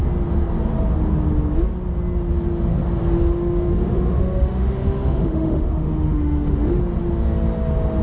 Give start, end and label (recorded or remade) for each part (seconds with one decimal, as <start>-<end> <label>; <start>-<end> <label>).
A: 0.0-3.7 recorded; 3.7-6.8 remade; 6.8-8.0 recorded